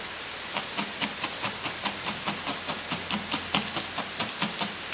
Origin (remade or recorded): recorded